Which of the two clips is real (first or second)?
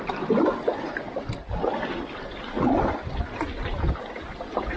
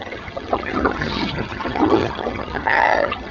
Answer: first